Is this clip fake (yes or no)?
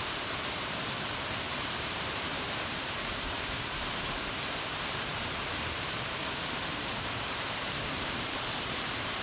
yes